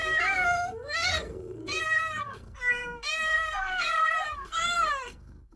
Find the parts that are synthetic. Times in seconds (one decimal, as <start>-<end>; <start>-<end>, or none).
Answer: 0.0-5.6